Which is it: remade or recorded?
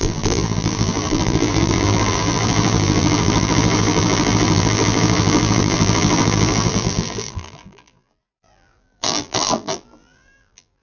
remade